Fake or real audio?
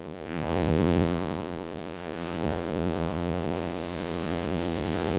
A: fake